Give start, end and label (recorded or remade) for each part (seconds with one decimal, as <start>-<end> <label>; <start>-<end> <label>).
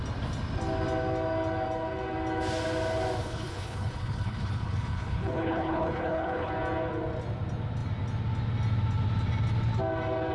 0.0-3.2 recorded; 3.2-6.5 remade; 6.5-10.3 recorded